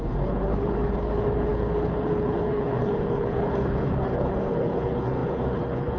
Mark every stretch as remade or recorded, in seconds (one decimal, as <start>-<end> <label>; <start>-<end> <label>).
0.0-6.0 remade

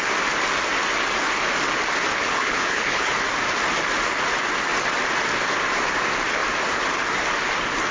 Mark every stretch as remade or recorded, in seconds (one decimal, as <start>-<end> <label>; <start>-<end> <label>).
0.0-2.1 recorded; 2.1-3.1 remade; 3.1-7.9 recorded

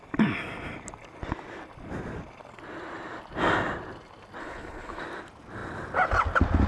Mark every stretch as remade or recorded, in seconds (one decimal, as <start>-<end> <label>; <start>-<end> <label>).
0.0-4.4 recorded; 4.4-5.0 remade; 5.0-6.7 recorded